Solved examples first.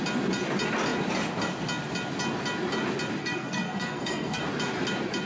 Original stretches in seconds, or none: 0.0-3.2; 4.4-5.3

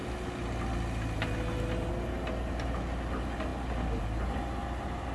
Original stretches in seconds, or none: 0.0-5.1